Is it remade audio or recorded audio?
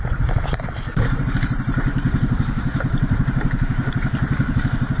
remade